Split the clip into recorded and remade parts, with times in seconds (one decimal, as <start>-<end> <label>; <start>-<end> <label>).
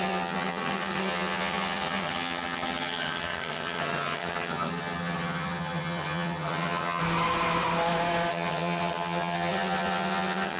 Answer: 0.0-7.0 remade; 7.0-8.3 recorded; 8.3-10.6 remade